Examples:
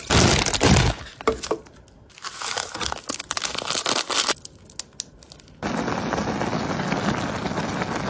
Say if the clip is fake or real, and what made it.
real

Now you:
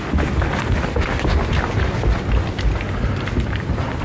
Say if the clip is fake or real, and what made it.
real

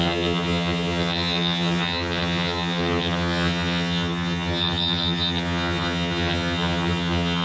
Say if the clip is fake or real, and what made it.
fake, vocoder, HiFi-GAN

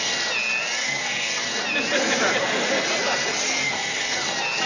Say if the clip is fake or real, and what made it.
real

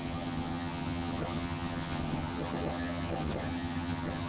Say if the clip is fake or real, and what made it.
fake, vocoder, HiFi-GAN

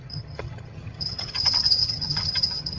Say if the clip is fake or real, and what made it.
fake, vocoder, HiFi-GAN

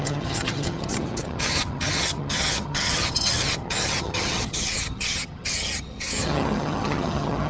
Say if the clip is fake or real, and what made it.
fake, vocoder, HiFi-GAN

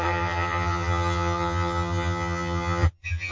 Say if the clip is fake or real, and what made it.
fake, vocoder, HiFi-GAN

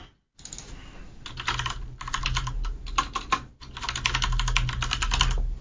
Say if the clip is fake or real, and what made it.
real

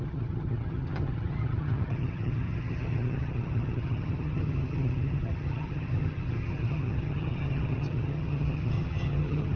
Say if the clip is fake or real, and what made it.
fake, vocoder, HiFi-GAN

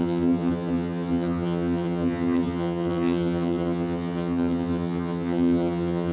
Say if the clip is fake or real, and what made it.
fake, vocoder, HiFi-GAN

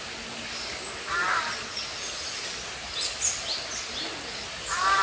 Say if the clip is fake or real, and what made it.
real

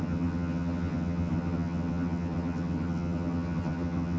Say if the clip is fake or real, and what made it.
fake, vocoder, HiFi-GAN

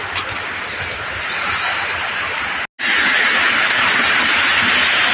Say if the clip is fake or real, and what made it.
real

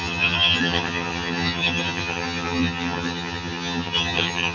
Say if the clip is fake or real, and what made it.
fake, vocoder, HiFi-GAN